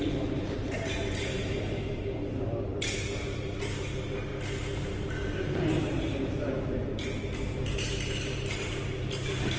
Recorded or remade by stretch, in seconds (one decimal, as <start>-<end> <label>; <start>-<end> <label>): 0.0-4.3 remade; 4.3-5.6 recorded; 5.6-6.8 remade; 6.8-8.7 recorded; 8.7-9.6 remade